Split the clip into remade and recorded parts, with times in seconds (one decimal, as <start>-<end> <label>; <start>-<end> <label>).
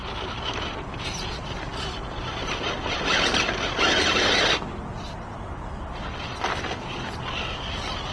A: 0.0-8.1 recorded